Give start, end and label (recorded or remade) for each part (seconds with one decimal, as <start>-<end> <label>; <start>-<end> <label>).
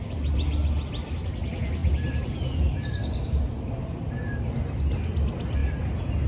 0.0-6.3 recorded